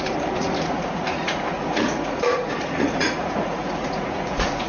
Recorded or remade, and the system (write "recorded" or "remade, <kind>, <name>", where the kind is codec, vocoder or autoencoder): remade, vocoder, Vocos